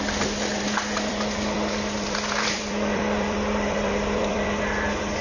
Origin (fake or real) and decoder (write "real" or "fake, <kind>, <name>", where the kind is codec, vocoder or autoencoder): fake, vocoder, BigVGAN v2